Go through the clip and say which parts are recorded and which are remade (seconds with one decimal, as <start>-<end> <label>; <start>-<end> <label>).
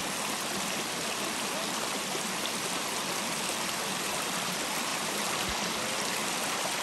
0.0-6.8 recorded